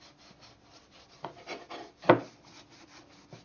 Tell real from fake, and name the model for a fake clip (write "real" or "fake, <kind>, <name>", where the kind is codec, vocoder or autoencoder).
real